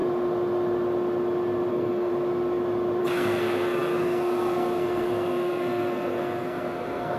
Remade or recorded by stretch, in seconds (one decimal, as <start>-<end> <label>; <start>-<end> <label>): 0.0-1.7 recorded; 1.7-2.1 remade; 2.1-3.0 recorded; 3.0-7.2 remade